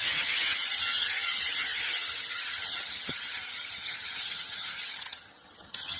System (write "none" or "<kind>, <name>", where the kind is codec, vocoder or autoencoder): vocoder, HiFi-GAN